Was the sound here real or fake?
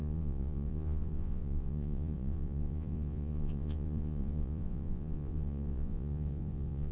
fake